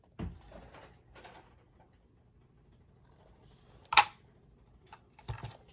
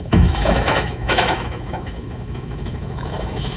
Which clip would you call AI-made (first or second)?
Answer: second